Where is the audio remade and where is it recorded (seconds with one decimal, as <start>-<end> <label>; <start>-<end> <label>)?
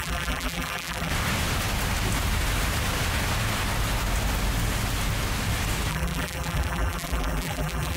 0.0-1.1 remade; 1.1-5.9 recorded; 5.9-8.0 remade